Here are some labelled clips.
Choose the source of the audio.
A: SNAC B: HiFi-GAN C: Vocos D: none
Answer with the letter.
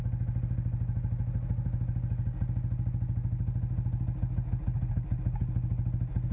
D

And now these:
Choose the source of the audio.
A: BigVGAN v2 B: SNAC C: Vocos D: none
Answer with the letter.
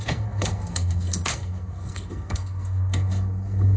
B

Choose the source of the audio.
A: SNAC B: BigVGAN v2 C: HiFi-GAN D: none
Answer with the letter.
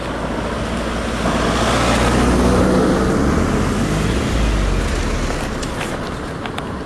D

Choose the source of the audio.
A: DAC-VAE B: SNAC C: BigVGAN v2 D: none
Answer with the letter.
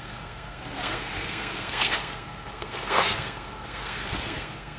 B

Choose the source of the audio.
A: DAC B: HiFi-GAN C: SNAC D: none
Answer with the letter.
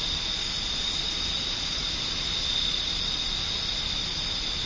D